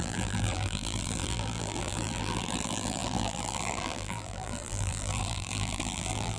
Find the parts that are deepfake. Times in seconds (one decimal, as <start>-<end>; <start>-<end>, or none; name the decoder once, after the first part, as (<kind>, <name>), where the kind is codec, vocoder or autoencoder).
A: 0.0-6.4 (vocoder, BigVGAN v2)